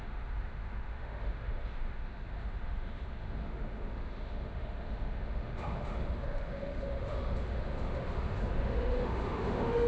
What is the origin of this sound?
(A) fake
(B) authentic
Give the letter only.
A